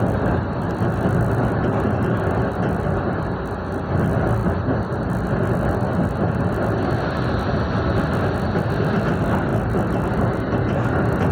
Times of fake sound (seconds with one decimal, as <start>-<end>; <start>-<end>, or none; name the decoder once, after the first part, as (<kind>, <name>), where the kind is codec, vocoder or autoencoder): none